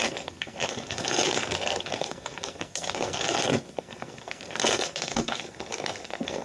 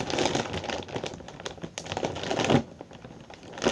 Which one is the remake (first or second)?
first